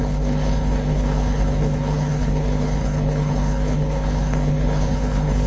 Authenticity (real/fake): fake